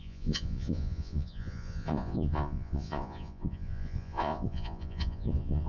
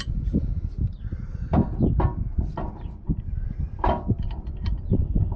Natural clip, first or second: second